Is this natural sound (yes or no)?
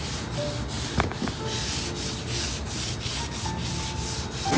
yes